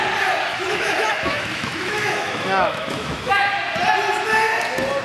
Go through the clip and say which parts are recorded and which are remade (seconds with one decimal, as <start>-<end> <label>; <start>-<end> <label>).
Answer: 0.0-0.5 recorded; 0.5-3.5 remade; 3.5-5.0 recorded

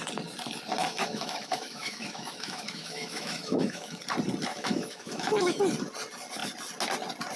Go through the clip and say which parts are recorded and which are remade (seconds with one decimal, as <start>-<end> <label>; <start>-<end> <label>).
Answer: 0.0-0.8 recorded; 0.8-4.0 remade; 4.0-4.5 recorded; 4.5-5.6 remade; 5.6-7.4 recorded

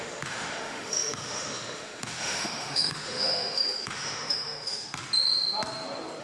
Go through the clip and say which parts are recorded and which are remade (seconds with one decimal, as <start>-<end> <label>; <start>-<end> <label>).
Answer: 0.0-4.9 remade; 4.9-6.2 recorded

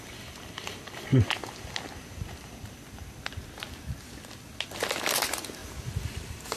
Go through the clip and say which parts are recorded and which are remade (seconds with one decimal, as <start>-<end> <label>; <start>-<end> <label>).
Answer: 0.0-6.6 recorded